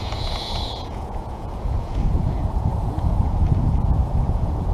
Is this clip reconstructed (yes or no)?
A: yes